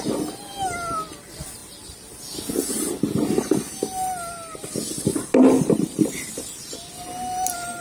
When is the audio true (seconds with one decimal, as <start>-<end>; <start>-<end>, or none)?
0.0-7.8